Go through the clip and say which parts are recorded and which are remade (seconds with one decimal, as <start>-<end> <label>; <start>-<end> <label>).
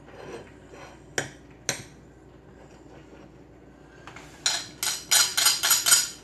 0.0-6.2 recorded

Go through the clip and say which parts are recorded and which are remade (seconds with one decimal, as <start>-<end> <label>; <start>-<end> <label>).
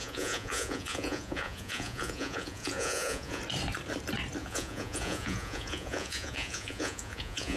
0.0-3.4 remade; 3.4-4.4 recorded; 4.4-7.6 remade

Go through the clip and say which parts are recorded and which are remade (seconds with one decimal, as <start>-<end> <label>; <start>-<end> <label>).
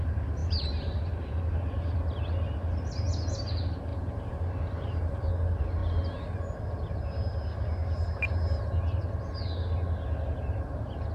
0.0-0.4 recorded; 0.4-1.0 remade; 1.0-3.9 recorded; 3.9-5.3 remade; 5.3-11.1 recorded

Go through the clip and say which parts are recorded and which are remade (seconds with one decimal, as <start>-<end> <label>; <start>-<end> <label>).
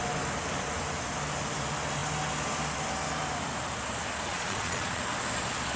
0.0-4.3 recorded; 4.3-5.0 remade; 5.0-5.8 recorded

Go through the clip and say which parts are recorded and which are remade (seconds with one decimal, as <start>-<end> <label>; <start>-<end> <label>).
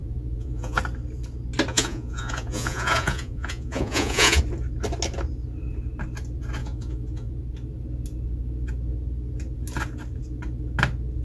0.0-0.8 remade; 0.8-1.7 recorded; 1.7-4.4 remade; 4.4-6.6 recorded; 6.6-7.3 remade; 7.3-11.2 recorded